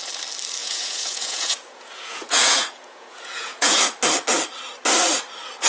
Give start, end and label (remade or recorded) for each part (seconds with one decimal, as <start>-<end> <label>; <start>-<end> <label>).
0.0-0.6 recorded; 0.6-3.8 remade; 3.8-5.7 recorded